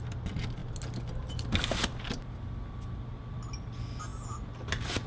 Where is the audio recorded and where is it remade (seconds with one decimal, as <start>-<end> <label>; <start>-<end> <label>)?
0.0-5.1 recorded